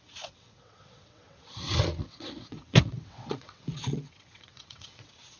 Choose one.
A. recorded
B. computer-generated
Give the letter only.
B